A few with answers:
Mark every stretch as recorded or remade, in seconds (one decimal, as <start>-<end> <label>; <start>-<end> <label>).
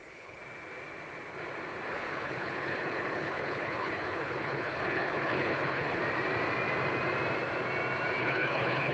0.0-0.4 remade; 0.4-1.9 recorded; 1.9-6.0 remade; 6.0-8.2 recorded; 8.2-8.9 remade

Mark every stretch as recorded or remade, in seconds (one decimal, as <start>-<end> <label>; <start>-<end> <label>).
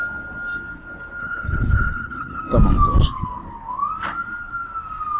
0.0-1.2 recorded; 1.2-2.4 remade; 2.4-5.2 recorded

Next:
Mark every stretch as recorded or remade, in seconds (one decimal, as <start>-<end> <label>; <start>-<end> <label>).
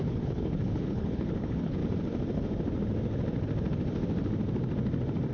0.0-1.8 remade; 1.8-5.3 recorded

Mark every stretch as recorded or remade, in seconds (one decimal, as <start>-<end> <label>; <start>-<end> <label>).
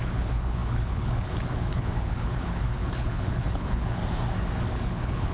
0.0-4.0 remade; 4.0-4.7 recorded; 4.7-5.3 remade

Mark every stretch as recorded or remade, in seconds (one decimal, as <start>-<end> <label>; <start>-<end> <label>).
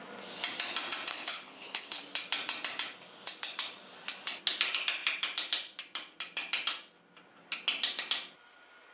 0.0-1.1 recorded; 1.1-2.0 remade; 2.0-8.9 recorded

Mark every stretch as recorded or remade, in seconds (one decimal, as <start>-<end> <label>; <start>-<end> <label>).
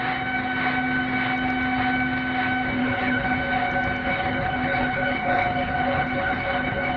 0.0-2.8 recorded; 2.8-3.4 remade; 3.4-4.0 recorded; 4.0-7.0 remade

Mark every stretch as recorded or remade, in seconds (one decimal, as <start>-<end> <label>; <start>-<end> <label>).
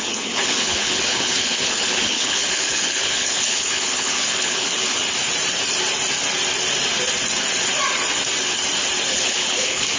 0.0-5.0 remade; 5.0-9.1 recorded; 9.1-10.0 remade